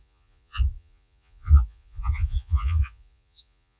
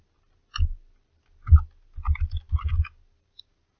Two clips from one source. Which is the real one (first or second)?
second